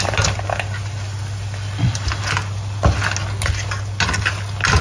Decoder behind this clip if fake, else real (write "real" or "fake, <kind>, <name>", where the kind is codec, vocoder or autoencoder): real